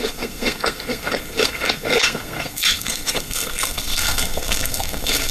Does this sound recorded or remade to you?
remade